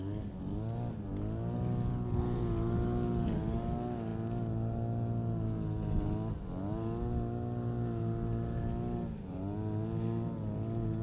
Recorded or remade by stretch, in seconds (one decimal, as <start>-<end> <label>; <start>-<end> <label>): 0.0-11.0 recorded